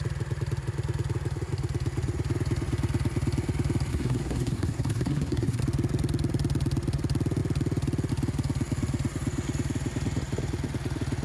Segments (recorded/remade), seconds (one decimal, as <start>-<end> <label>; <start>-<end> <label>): 0.0-3.9 recorded; 3.9-5.6 remade; 5.6-11.2 recorded